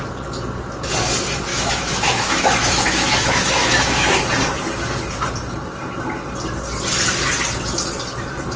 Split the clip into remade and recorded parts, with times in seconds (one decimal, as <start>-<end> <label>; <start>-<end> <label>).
0.0-1.5 recorded; 1.5-4.2 remade; 4.2-8.6 recorded